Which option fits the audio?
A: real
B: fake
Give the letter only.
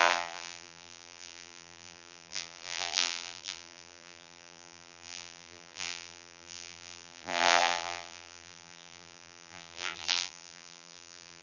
B